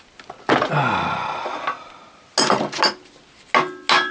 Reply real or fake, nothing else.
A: real